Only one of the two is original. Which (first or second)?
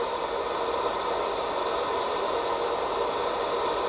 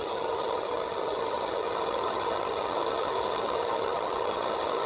first